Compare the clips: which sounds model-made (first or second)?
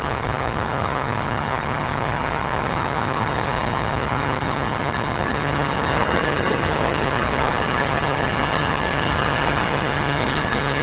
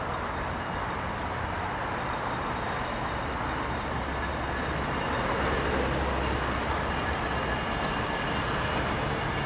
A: first